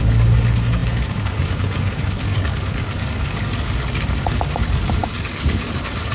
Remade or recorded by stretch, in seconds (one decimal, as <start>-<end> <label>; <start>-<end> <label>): 0.0-6.1 remade